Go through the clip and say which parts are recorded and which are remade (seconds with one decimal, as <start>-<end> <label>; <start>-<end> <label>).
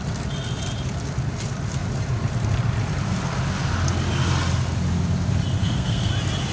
0.0-5.6 recorded; 5.6-6.1 remade; 6.1-6.5 recorded